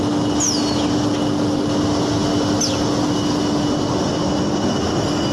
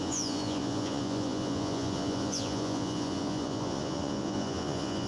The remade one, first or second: second